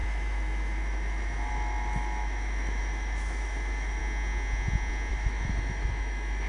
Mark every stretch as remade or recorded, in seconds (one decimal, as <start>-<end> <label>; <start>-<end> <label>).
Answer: 0.0-4.0 remade; 4.0-5.1 recorded; 5.1-6.5 remade